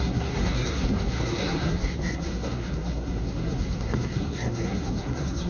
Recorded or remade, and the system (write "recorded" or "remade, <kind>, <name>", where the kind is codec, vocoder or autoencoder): remade, codec, SNAC